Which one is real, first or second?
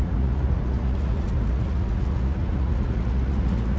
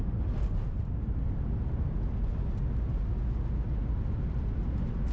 second